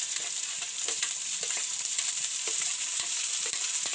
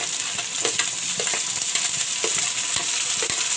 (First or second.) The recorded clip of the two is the second